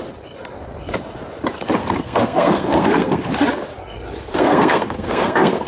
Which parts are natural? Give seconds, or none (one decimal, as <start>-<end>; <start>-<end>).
0.0-1.8; 3.3-4.3